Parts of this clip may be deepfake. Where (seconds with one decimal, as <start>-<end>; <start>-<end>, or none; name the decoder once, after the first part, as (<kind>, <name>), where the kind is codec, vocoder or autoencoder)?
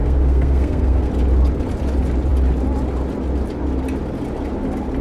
0.0-1.1 (codec, SNAC)